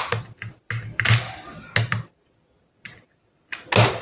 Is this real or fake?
real